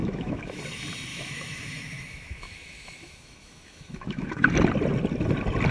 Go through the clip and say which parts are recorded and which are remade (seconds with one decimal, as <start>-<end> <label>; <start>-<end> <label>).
0.0-0.6 remade; 0.6-1.1 recorded; 1.1-4.5 remade; 4.5-5.7 recorded